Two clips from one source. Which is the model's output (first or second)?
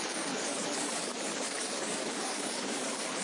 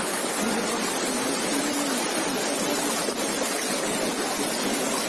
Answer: first